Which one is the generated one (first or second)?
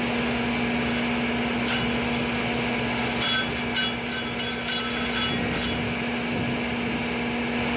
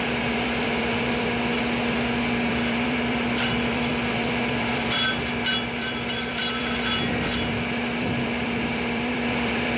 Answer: second